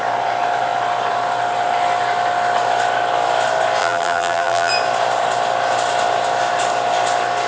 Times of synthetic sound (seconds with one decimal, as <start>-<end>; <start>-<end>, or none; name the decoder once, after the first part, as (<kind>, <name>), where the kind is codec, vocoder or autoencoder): 3.8-4.7 (vocoder, BigVGAN v2)